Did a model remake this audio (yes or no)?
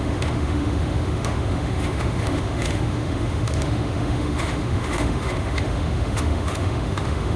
yes